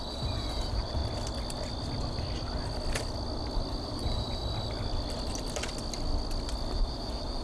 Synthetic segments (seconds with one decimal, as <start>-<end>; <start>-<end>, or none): 0.0-1.0; 3.8-4.4; 6.7-7.4

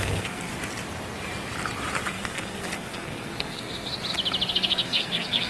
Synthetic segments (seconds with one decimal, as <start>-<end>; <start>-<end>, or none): 0.0-0.5; 2.1-3.9; 4.5-5.5

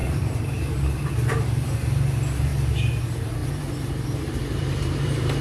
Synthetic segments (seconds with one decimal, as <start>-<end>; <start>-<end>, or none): 0.0-2.5; 3.0-5.4

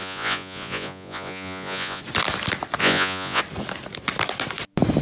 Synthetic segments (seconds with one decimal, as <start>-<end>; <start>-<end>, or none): 0.0-2.0; 2.8-3.4

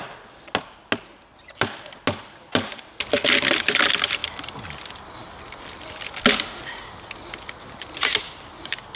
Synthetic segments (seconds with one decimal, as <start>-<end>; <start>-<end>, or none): none